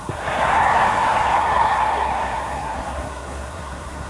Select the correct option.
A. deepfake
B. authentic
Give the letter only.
A